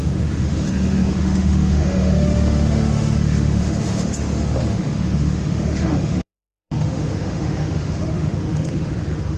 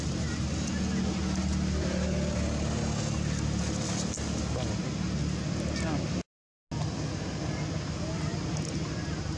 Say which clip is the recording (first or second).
second